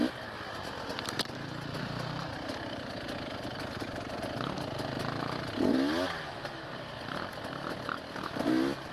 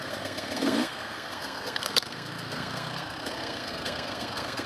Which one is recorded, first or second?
first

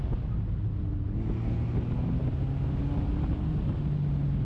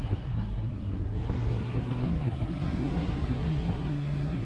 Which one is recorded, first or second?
first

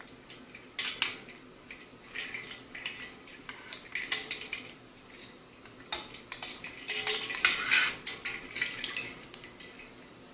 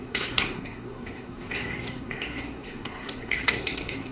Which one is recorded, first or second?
first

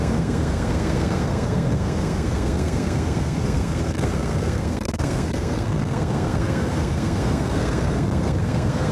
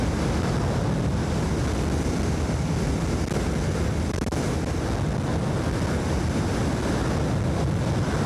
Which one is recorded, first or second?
second